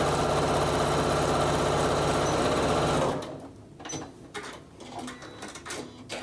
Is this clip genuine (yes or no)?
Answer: yes